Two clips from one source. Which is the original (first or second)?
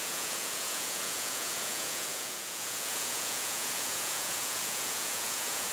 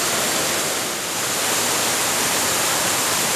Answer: second